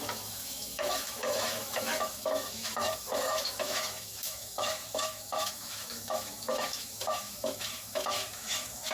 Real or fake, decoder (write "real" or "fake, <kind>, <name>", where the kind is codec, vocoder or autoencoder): fake, autoencoder, DAC-VAE